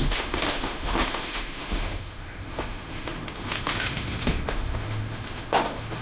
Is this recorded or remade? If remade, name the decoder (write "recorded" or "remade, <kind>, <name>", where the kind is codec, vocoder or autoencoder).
remade, autoencoder, DAC-VAE